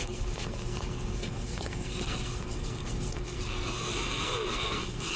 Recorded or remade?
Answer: remade